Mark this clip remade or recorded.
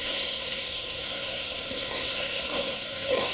remade